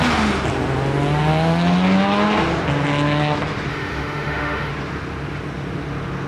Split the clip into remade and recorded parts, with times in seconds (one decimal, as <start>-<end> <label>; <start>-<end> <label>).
0.0-3.7 recorded; 3.7-4.7 remade; 4.7-6.3 recorded